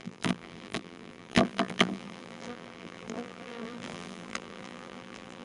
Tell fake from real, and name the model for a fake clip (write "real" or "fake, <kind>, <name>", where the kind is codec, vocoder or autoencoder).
fake, vocoder, BigVGAN v2